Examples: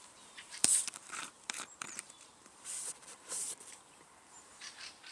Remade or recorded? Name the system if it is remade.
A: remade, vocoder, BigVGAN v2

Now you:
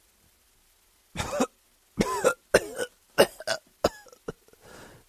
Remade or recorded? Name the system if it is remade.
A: recorded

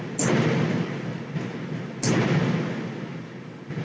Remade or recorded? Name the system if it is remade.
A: recorded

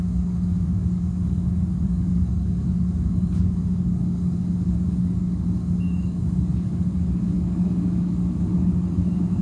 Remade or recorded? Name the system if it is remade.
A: remade, codec, DAC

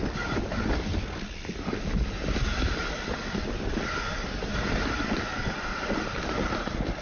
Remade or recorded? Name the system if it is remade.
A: recorded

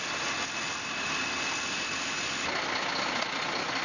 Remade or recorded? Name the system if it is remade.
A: recorded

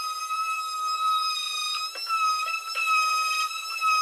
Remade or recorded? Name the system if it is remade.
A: remade, vocoder, BigVGAN v2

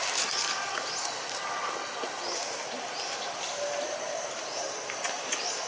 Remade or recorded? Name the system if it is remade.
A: recorded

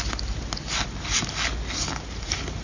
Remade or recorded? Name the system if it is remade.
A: recorded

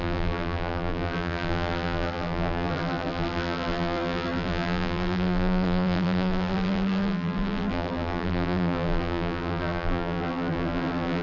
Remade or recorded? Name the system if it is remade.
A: remade, vocoder, BigVGAN v2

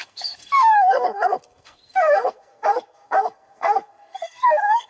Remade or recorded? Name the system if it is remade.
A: remade, codec, SNAC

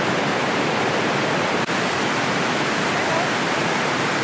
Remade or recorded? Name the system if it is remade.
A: recorded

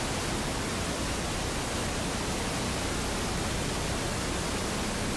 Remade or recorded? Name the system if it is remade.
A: recorded